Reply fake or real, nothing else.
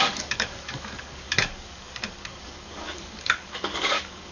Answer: fake